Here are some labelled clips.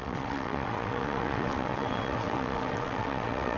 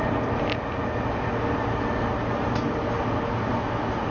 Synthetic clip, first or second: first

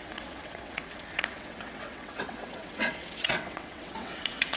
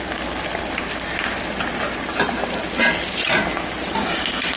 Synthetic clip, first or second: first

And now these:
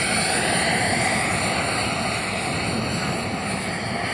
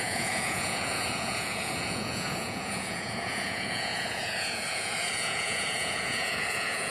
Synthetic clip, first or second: second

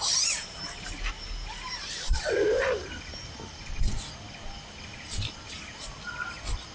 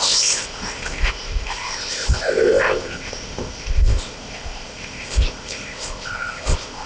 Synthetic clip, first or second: second